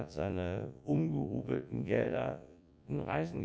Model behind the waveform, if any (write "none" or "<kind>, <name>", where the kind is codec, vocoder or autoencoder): vocoder, Vocos